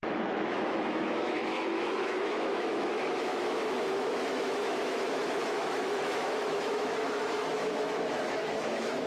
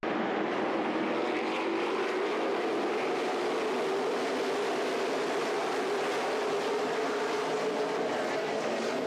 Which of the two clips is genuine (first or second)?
second